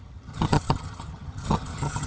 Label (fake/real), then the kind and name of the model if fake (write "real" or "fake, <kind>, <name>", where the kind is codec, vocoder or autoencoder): fake, vocoder, HiFi-GAN